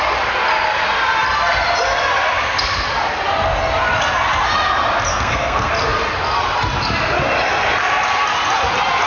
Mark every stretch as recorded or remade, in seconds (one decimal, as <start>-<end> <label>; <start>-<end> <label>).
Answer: 0.0-5.1 recorded; 5.1-5.7 remade; 5.7-9.1 recorded